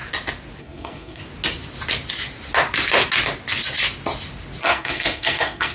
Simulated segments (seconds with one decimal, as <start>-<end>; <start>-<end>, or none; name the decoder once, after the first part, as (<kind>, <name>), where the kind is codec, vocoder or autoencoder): 0.6-1.2 (codec, SNAC); 4.6-5.7